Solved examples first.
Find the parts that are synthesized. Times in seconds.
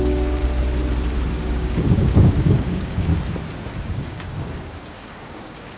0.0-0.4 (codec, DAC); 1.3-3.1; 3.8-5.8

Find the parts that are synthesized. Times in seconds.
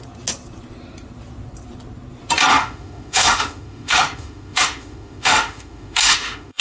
2.5-6.6 (autoencoder, DAC-VAE)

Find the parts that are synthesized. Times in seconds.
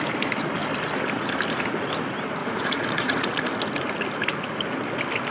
2.4-3.4 (vocoder, Vocos)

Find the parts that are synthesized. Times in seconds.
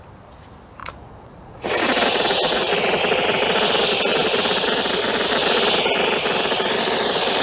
0.8-2.8 (vocoder, Vocos)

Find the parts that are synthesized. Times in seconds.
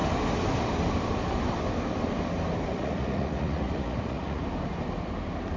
2.7-4.4 (vocoder, Vocos)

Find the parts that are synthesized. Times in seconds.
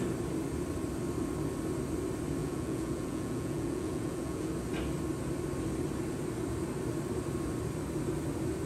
2.4-4.5 (vocoder, Vocos)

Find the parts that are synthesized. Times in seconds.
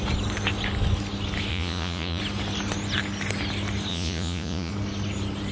1.5-2.2 (vocoder, Vocos); 3.9-4.7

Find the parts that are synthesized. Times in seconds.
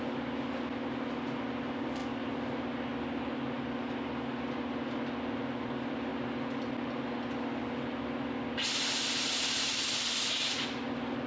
none